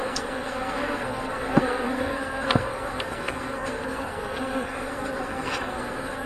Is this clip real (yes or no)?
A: no